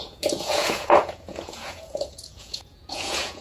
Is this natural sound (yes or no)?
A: no